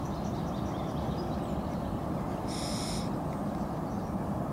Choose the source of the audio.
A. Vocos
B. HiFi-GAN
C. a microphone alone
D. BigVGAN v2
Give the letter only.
C